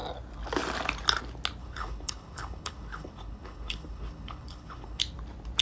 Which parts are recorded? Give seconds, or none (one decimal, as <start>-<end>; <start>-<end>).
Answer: 0.0-1.6; 5.0-5.6